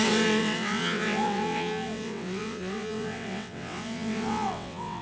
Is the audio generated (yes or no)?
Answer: yes